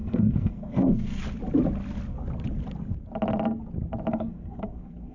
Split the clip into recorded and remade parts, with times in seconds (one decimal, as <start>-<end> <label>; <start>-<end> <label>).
0.0-1.2 remade; 1.2-4.1 recorded; 4.1-5.1 remade